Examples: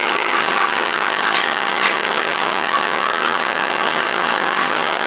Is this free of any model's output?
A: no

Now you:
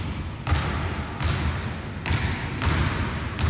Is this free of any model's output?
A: yes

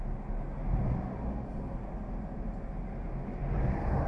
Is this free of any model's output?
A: yes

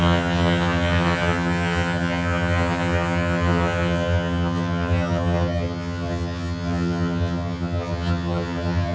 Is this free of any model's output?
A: no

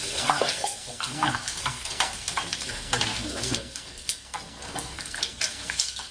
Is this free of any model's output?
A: no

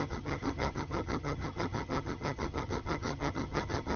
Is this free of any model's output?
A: no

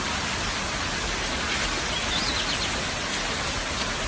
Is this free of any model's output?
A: yes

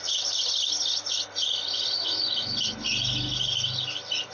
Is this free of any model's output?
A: yes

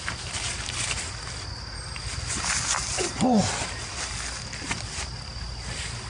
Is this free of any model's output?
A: yes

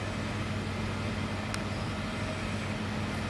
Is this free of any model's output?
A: yes